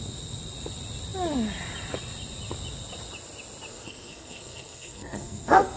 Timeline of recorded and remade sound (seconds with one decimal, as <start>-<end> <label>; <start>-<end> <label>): 0.0-3.7 recorded; 3.7-5.8 remade

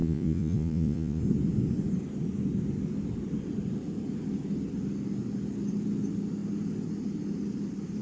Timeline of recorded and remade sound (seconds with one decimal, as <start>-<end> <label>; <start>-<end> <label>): 0.0-1.2 remade; 1.2-8.0 recorded

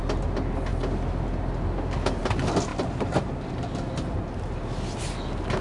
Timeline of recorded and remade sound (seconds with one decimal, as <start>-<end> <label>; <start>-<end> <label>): 0.0-2.7 recorded; 2.7-4.2 remade; 4.2-5.6 recorded

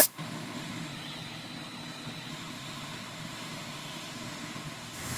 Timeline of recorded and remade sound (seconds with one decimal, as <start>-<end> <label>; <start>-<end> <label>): 0.0-0.9 remade; 0.9-2.3 recorded; 2.3-5.2 remade

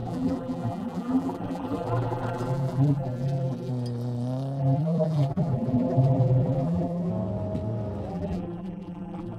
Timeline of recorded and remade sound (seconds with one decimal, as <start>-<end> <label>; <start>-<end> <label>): 0.0-3.7 remade; 3.7-4.6 recorded; 4.6-7.1 remade; 7.1-8.1 recorded; 8.1-9.4 remade

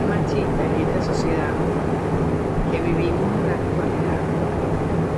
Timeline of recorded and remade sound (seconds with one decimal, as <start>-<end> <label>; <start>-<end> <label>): 0.0-5.2 recorded

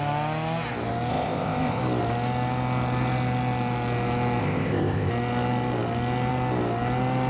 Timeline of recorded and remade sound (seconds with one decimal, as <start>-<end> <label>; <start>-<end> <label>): 0.0-1.1 recorded; 1.1-1.8 remade; 1.8-4.4 recorded; 4.4-5.1 remade; 5.1-7.3 recorded